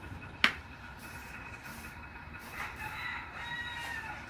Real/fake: fake